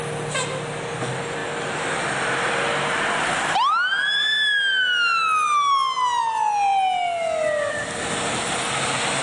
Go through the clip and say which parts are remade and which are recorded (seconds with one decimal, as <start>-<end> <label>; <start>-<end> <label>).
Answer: 0.0-9.2 recorded